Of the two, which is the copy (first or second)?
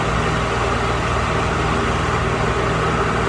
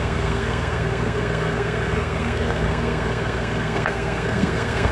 second